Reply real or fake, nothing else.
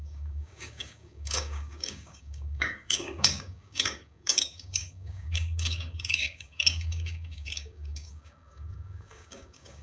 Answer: fake